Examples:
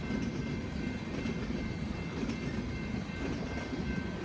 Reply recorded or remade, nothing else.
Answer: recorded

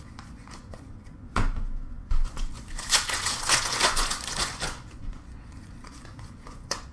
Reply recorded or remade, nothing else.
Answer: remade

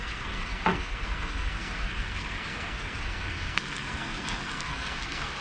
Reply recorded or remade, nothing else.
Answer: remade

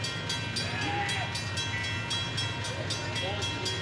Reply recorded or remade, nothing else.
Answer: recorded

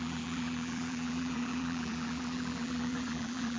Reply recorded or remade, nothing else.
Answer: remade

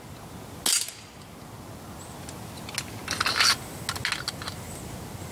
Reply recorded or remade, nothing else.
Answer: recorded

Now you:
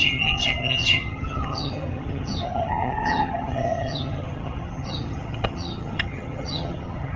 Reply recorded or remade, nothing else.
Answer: remade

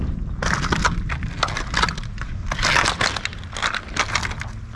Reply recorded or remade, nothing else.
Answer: recorded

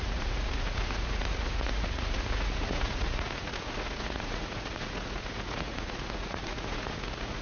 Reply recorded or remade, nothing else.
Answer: remade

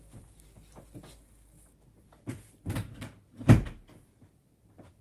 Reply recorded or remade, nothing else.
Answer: recorded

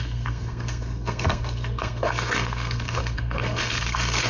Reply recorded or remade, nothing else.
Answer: remade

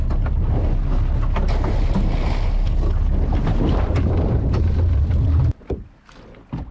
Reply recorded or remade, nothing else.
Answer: recorded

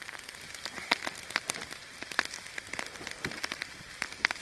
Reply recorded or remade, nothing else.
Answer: recorded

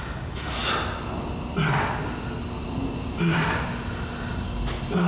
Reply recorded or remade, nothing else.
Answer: recorded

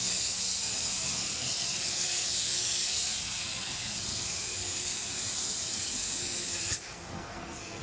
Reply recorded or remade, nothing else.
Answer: remade